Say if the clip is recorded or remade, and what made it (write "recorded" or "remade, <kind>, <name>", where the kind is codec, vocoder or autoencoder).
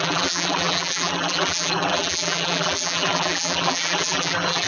remade, vocoder, BigVGAN v2